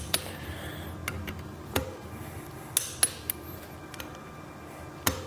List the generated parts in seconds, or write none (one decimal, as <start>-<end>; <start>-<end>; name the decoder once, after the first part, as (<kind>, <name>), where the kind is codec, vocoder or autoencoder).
none